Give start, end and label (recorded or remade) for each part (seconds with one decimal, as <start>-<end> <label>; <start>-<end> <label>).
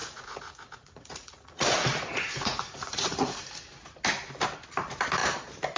0.0-3.5 remade; 3.5-5.8 recorded